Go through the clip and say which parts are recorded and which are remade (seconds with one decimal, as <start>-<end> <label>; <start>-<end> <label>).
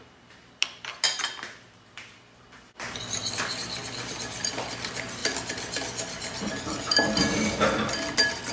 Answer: 0.0-8.5 recorded